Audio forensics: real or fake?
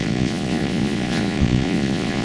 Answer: fake